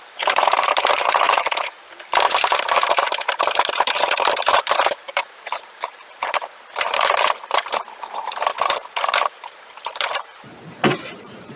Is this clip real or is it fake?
fake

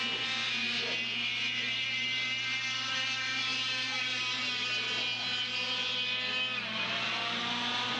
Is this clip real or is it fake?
real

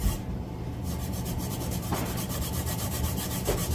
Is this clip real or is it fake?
fake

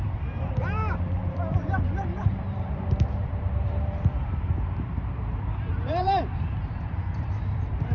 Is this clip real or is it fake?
fake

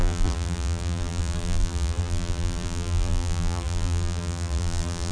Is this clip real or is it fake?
fake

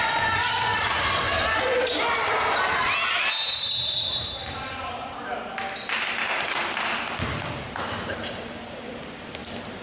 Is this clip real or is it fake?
real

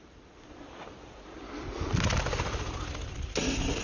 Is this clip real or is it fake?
real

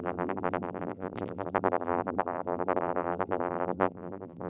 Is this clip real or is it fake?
fake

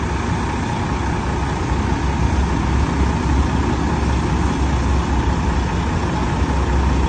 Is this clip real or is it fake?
real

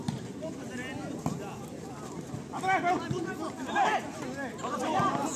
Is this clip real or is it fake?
real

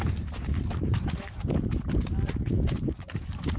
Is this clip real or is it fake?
fake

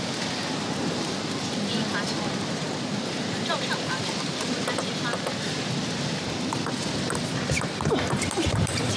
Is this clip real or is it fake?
fake